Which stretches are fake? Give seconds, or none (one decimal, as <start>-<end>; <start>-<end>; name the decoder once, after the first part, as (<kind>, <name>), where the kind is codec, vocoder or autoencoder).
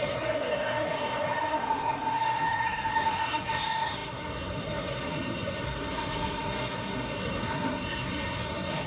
0.0-8.9 (codec, SNAC)